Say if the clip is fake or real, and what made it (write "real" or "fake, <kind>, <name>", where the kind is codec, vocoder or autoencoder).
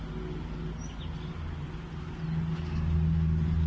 real